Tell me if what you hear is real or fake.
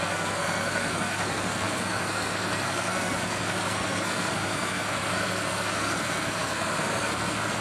fake